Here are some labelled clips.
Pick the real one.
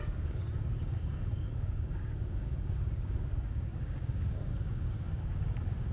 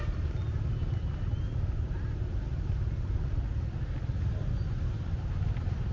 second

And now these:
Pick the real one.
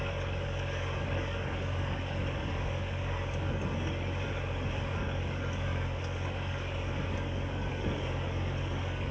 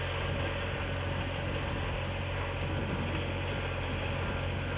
second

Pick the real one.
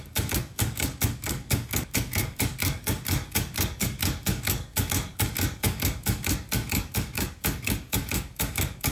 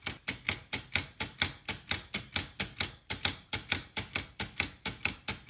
second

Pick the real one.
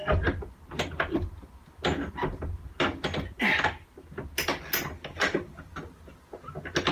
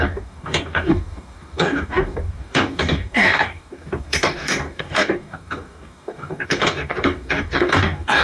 first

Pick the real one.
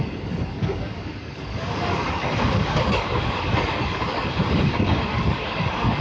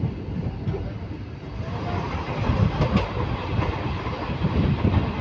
second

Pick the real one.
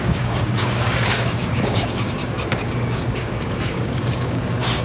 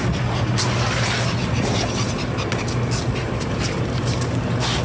second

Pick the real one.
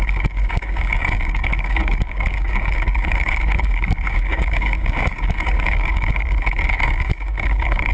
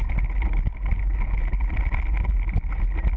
second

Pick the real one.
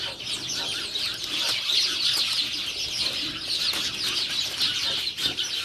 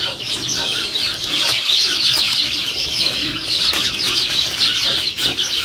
first